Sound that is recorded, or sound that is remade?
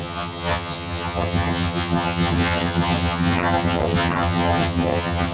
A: remade